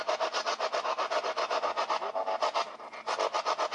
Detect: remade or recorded recorded